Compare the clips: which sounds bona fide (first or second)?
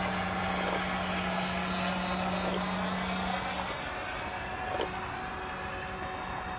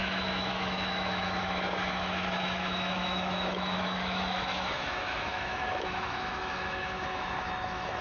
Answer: first